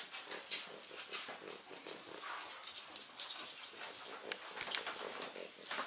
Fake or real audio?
real